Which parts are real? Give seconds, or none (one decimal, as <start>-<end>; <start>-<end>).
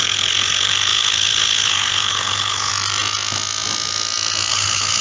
2.7-4.5